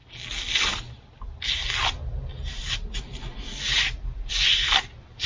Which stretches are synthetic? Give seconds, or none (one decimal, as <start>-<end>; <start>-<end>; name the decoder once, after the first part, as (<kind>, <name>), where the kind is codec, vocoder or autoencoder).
none